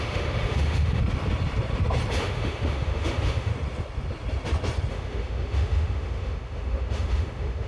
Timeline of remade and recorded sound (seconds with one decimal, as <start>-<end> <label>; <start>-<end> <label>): 0.0-1.0 remade; 1.0-2.1 recorded; 2.1-3.5 remade; 3.5-4.9 recorded; 4.9-7.7 remade

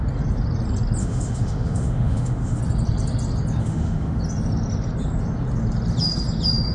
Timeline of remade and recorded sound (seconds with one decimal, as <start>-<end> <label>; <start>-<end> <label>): 0.0-1.0 recorded; 1.0-2.6 remade; 2.6-3.6 recorded; 3.6-4.2 remade; 4.2-6.7 recorded

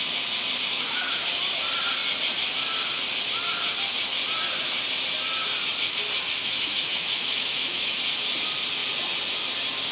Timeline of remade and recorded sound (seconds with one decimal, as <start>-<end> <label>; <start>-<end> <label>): 0.0-0.7 recorded; 0.7-1.3 remade; 1.3-6.4 recorded; 6.4-8.0 remade; 8.0-9.9 recorded

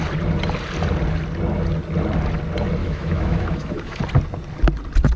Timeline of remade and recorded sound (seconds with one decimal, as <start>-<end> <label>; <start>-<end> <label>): 0.0-2.8 recorded; 2.8-4.0 remade; 4.0-5.2 recorded

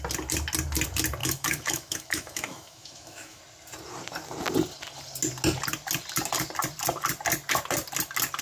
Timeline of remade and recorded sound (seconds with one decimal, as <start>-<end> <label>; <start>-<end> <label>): 0.0-1.2 recorded; 1.2-3.4 remade; 3.4-8.4 recorded

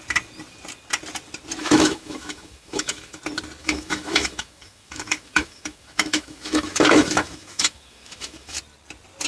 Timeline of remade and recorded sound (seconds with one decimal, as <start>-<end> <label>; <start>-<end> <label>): 0.0-1.6 recorded; 1.6-3.2 remade; 3.2-3.6 recorded; 3.6-8.6 remade; 8.6-9.3 recorded